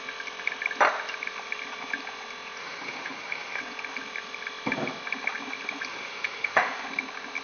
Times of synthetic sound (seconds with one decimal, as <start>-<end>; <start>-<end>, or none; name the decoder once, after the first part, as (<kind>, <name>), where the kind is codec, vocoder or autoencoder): 2.6-3.6 (autoencoder, DAC-VAE); 5.9-6.6